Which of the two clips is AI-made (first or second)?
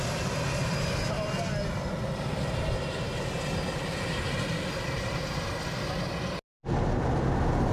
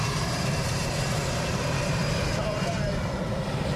second